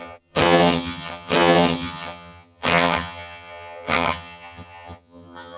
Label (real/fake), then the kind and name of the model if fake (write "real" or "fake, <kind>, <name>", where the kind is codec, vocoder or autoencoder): fake, vocoder, HiFi-GAN